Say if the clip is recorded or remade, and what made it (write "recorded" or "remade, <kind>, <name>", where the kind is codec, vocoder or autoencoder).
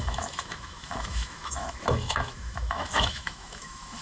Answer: remade, autoencoder, DAC-VAE